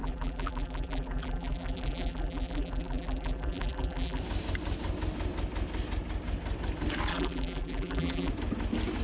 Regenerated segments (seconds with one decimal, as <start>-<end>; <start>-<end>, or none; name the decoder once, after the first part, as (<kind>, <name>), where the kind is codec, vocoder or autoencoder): 0.0-4.2 (vocoder, BigVGAN v2); 7.1-8.3